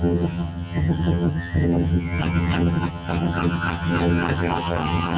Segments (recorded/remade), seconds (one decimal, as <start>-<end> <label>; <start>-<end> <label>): 0.0-5.2 remade